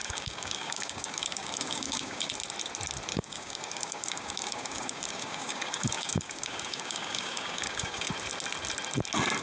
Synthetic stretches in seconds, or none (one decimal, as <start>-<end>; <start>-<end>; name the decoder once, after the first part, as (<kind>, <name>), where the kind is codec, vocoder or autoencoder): 0.0-2.3 (codec, DAC); 3.1-8.1